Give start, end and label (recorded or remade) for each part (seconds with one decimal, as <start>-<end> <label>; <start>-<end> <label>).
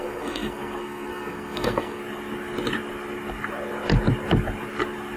0.0-2.0 remade; 2.0-5.2 recorded